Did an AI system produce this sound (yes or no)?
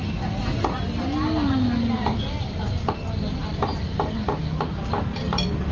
no